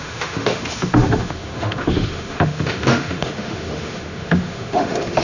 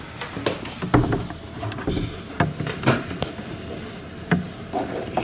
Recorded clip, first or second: second